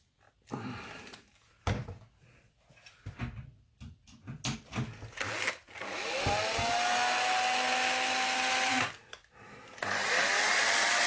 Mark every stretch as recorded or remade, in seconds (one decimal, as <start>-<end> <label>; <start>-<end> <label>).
0.0-11.1 recorded